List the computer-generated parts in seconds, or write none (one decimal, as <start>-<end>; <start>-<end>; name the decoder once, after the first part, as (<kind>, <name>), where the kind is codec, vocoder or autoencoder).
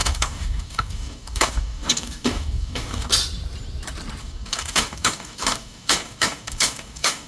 0.0-3.1 (codec, DAC); 4.2-7.3